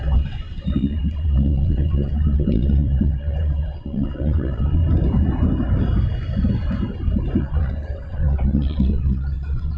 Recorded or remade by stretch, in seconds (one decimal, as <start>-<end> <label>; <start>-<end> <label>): 0.0-4.8 remade; 4.8-7.4 recorded; 7.4-9.8 remade

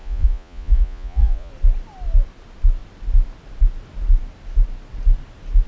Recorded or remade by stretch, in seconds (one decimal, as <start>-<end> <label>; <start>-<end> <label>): 0.0-1.5 remade; 1.5-5.7 recorded

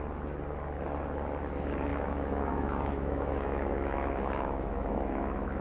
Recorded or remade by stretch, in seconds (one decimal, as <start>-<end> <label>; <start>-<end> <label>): 0.0-1.9 recorded; 1.9-5.6 remade

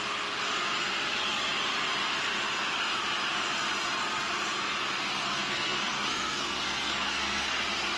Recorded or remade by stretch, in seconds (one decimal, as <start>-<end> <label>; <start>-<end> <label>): 0.0-5.2 recorded; 5.2-7.6 remade; 7.6-8.0 recorded

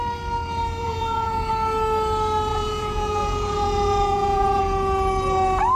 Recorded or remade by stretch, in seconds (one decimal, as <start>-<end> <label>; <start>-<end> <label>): 0.0-0.8 recorded; 0.8-1.5 remade; 1.5-2.5 recorded; 2.5-4.6 remade; 4.6-5.8 recorded